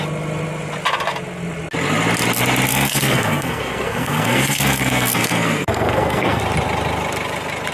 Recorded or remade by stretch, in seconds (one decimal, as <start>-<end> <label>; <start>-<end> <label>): 0.0-2.7 recorded; 2.7-6.4 remade; 6.4-7.7 recorded

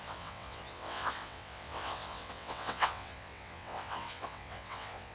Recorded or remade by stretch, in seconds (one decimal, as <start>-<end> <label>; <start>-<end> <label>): 0.0-5.1 remade

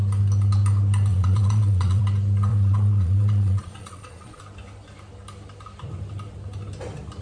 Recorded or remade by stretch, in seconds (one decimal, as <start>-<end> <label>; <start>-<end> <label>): 0.0-1.1 recorded; 1.1-2.0 remade; 2.0-2.5 recorded; 2.5-4.4 remade; 4.4-7.2 recorded

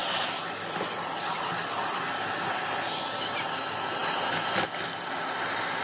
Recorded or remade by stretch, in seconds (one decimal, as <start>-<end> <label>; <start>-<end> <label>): 0.0-5.8 recorded

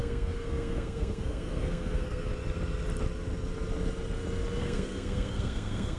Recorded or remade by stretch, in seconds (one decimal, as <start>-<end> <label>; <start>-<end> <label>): 0.0-2.3 remade; 2.3-4.6 recorded; 4.6-6.0 remade

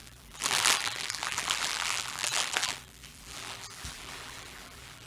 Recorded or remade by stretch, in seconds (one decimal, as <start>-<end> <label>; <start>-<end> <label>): 0.0-5.1 remade

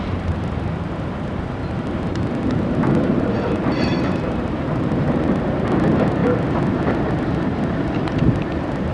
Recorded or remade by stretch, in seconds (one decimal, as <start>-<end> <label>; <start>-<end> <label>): 0.0-1.6 remade; 1.6-3.0 recorded; 3.0-6.2 remade; 6.2-7.6 recorded; 7.6-8.9 remade